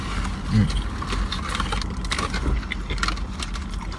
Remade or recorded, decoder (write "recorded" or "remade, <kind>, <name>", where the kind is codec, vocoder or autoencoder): recorded